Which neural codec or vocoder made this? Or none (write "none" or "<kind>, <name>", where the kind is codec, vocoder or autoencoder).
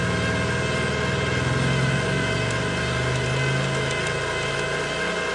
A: none